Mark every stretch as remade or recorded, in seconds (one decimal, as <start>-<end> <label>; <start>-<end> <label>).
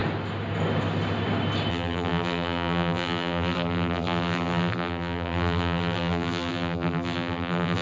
0.0-1.7 recorded; 1.7-7.8 remade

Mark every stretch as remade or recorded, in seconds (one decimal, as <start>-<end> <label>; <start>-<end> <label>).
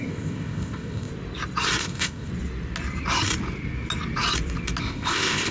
0.0-1.1 remade; 1.1-1.8 recorded; 1.8-2.3 remade; 2.3-4.8 recorded; 4.8-5.5 remade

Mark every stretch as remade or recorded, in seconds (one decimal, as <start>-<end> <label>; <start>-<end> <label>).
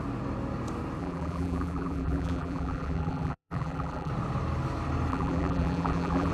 0.0-1.0 recorded; 1.0-4.1 remade; 4.1-5.1 recorded; 5.1-6.3 remade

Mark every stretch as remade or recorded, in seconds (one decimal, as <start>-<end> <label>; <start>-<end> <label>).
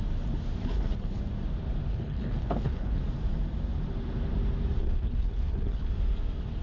0.0-0.6 recorded; 0.6-1.2 remade; 1.2-1.9 recorded; 1.9-3.0 remade; 3.0-4.8 recorded; 4.8-5.9 remade; 5.9-6.6 recorded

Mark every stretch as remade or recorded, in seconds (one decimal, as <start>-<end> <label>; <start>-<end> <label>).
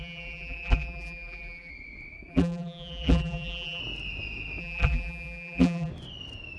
0.0-1.7 remade; 1.7-2.3 recorded; 2.3-3.8 remade; 3.8-4.6 recorded; 4.6-5.9 remade; 5.9-6.6 recorded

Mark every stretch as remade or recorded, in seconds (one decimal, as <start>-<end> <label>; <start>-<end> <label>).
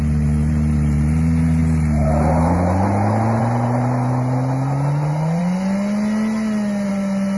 0.0-7.4 recorded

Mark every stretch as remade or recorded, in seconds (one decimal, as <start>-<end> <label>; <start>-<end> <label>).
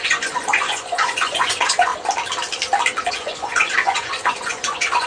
0.0-1.9 remade; 1.9-3.1 recorded; 3.1-5.1 remade